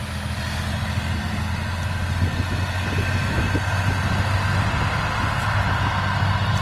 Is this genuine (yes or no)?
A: yes